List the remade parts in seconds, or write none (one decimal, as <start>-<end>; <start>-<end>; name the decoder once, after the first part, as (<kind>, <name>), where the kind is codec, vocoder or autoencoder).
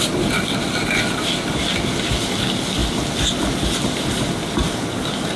none